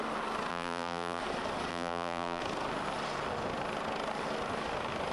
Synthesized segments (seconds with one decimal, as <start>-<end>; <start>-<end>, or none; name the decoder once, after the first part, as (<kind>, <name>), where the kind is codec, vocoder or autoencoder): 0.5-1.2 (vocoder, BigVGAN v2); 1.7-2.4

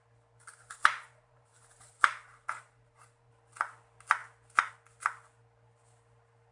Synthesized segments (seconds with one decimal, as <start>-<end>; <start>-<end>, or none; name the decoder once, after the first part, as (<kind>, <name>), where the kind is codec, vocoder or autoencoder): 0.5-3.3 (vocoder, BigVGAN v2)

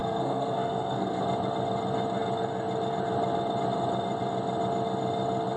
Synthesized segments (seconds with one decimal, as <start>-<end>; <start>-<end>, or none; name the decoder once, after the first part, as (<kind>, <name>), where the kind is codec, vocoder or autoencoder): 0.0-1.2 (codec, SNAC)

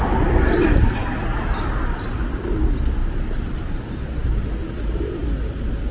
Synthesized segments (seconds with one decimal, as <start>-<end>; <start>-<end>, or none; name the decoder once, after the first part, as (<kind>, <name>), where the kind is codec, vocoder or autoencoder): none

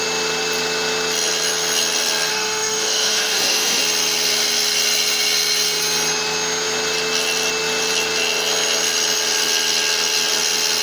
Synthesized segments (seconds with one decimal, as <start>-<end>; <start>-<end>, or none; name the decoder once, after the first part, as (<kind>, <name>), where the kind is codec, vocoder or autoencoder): 2.3-3.8 (autoencoder, DAC-VAE)

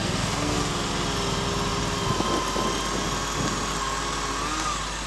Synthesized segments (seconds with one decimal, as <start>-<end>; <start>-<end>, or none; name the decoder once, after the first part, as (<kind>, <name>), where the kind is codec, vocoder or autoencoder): 0.0-0.6 (codec, SNAC)